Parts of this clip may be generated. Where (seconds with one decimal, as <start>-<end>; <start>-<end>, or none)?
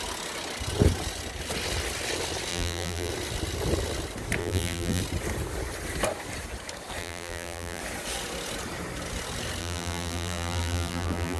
2.5-3.1; 4.4-5.0; 7.0-7.8; 9.6-11.4